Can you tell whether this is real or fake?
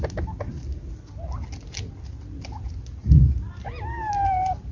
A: real